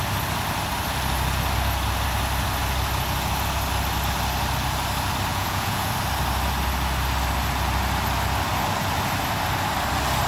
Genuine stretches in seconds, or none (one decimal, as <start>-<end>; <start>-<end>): 0.0-5.3; 5.9-10.3